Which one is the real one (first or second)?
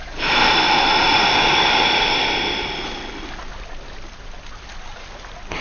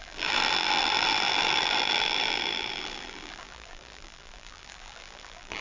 first